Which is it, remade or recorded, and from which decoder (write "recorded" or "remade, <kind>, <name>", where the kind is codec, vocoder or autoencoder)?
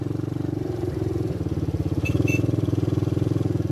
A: remade, vocoder, BigVGAN v2